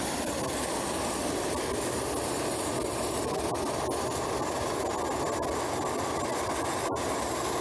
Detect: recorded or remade recorded